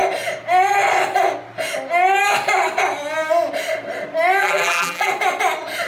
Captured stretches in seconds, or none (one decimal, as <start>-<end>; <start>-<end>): 0.0-4.4; 5.1-5.9